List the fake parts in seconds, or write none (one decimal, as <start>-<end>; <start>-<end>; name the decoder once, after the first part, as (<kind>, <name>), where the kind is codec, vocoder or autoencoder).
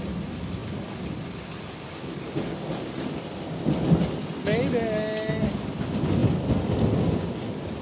none